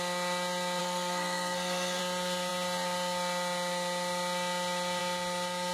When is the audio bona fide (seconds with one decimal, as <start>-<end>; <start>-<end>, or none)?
0.0-0.8; 2.0-5.7